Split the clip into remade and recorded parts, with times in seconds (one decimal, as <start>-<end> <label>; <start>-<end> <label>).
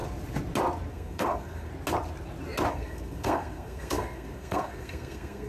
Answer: 0.0-0.9 recorded; 0.9-1.7 remade; 1.7-2.7 recorded; 2.7-5.5 remade